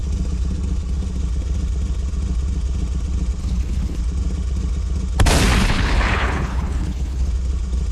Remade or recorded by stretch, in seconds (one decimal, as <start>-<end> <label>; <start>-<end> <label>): 0.0-3.4 recorded; 3.4-4.0 remade; 4.0-5.6 recorded; 5.6-7.3 remade; 7.3-7.9 recorded